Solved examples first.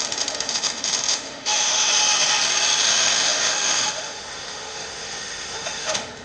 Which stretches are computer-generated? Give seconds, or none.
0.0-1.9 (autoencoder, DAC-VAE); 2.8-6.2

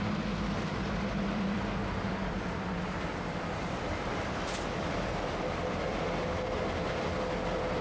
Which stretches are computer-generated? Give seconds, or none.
0.8-1.7 (vocoder, BigVGAN v2); 2.2-6.9

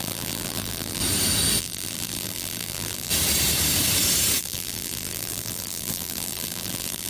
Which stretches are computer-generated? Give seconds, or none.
0.0-1.0 (vocoder, BigVGAN v2); 1.6-3.1; 4.4-7.1

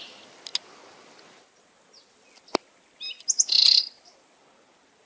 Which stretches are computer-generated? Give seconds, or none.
none

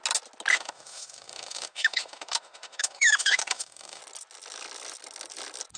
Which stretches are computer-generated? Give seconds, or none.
0.5-4.0 (autoencoder, DAC-VAE)

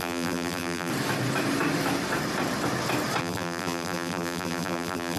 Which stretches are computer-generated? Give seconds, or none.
0.0-0.9 (vocoder, BigVGAN v2); 3.2-5.2